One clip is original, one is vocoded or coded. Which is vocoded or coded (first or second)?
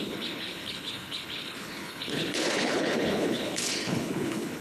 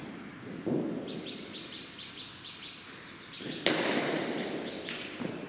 first